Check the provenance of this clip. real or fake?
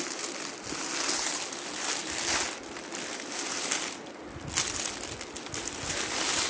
real